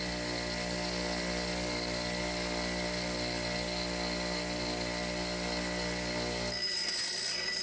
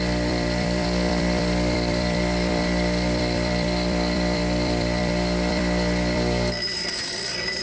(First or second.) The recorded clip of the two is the first